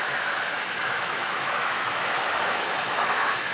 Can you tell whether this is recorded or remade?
remade